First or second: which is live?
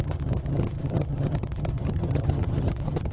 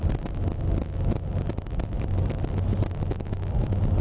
second